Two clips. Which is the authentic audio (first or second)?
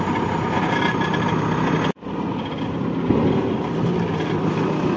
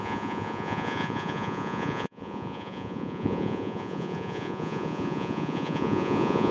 first